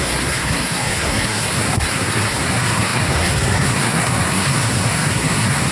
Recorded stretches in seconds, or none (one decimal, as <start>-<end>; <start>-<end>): none